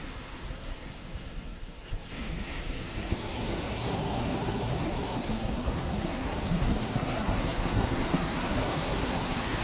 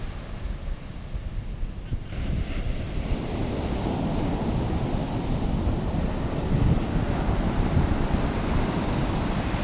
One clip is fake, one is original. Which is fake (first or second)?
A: first